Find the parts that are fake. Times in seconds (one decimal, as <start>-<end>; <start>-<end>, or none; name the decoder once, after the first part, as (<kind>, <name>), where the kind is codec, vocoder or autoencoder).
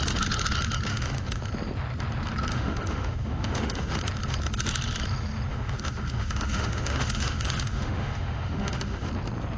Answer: 0.9-1.4 (autoencoder, DAC-VAE); 2.5-4.0; 5.5-9.1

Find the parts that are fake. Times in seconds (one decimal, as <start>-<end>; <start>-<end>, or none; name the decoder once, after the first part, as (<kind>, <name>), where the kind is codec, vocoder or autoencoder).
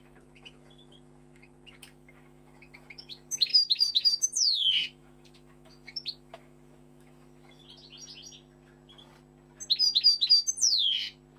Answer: 0.0-7.6 (autoencoder, DAC-VAE)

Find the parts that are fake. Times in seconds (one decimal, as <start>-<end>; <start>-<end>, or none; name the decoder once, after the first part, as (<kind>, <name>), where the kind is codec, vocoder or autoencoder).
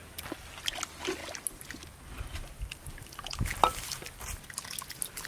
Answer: none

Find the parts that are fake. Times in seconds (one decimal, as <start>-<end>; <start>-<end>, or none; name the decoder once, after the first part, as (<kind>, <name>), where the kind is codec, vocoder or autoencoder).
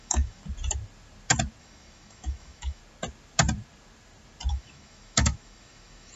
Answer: 0.0-0.4 (autoencoder, DAC-VAE); 1.6-2.8; 4.5-6.2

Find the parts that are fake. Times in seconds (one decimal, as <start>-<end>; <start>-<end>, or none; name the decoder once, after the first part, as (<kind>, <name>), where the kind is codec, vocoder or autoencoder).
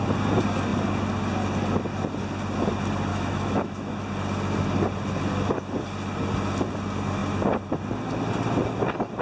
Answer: 3.1-4.1 (autoencoder, DAC-VAE)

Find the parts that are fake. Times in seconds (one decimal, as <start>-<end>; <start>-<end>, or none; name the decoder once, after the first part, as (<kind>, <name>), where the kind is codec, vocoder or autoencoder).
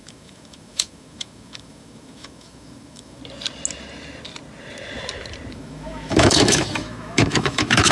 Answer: 0.0-3.2 (autoencoder, DAC-VAE); 5.5-7.9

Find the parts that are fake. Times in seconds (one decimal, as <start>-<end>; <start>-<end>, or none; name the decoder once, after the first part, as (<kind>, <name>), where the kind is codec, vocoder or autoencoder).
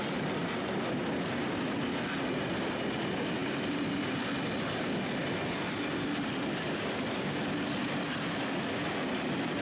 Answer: none